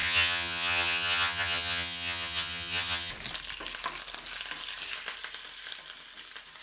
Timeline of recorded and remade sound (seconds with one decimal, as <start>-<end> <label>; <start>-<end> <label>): 0.0-3.1 remade; 3.1-6.6 recorded